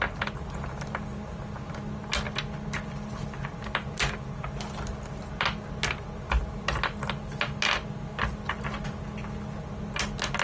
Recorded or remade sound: recorded